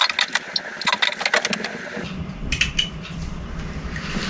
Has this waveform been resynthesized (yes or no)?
no